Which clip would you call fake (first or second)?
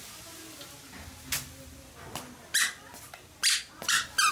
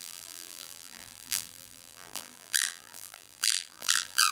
second